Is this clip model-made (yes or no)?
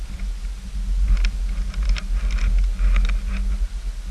no